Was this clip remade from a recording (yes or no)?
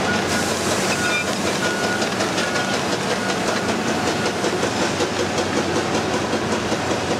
no